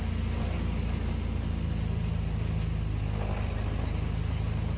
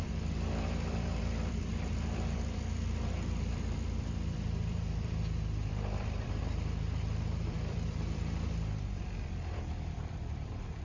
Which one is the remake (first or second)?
second